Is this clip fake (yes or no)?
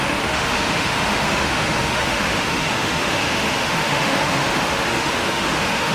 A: yes